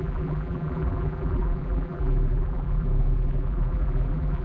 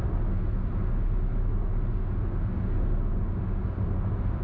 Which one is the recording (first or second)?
second